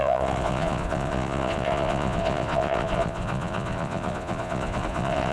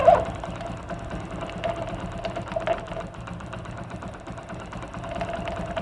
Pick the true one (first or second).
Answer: second